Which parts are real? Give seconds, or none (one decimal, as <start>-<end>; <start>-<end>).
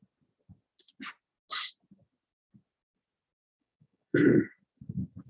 0.0-3.4; 4.5-5.3